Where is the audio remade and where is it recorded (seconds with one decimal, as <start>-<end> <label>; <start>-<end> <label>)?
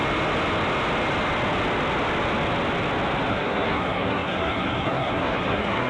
0.0-3.3 recorded; 3.3-5.9 remade